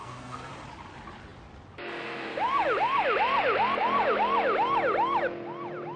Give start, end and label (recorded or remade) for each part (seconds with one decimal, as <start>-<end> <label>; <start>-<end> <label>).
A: 0.0-0.5 remade; 0.5-6.0 recorded